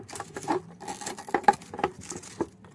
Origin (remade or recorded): recorded